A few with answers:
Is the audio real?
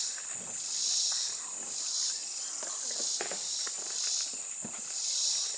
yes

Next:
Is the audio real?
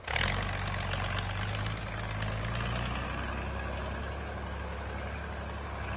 yes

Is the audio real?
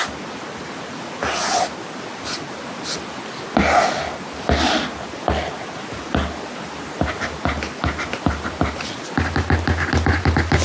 yes